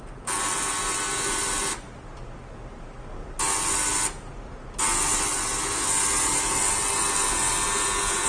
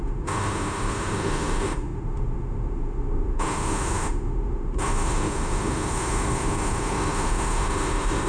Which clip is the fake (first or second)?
second